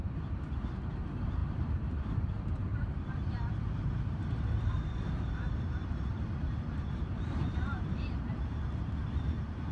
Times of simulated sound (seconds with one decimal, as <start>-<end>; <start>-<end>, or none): 0.0-9.7